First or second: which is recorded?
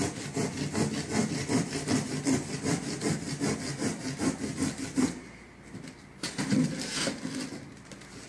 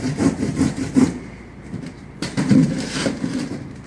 first